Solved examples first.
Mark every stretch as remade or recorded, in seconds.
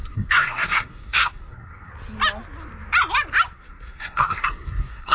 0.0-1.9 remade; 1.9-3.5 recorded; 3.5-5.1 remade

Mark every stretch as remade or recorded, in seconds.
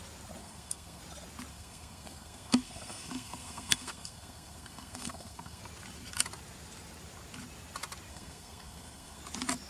0.0-0.4 recorded; 0.4-1.0 remade; 1.0-1.5 recorded; 1.5-5.6 remade; 5.6-8.1 recorded; 8.1-9.2 remade; 9.2-9.7 recorded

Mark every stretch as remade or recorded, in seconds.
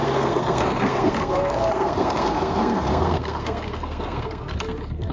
0.0-5.1 remade